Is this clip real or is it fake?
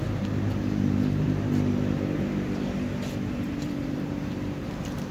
fake